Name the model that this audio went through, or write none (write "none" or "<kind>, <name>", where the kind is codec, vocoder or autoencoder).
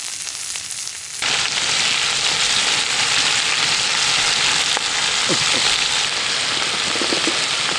none